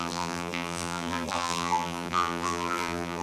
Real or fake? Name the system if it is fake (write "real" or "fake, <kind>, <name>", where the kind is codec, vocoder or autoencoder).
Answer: fake, vocoder, BigVGAN v2